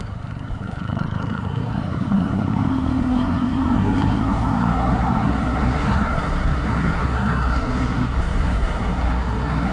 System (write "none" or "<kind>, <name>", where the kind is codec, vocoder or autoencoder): codec, SNAC